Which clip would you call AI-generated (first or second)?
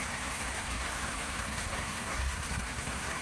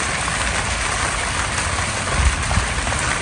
first